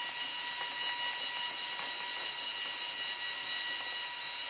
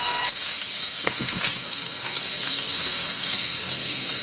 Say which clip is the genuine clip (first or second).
first